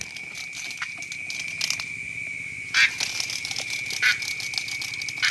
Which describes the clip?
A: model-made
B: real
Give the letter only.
B